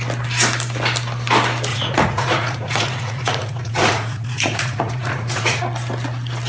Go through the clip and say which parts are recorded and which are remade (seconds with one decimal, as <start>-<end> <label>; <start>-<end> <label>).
0.0-1.7 recorded; 1.7-5.6 remade; 5.6-6.5 recorded